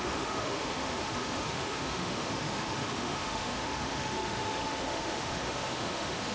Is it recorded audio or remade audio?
remade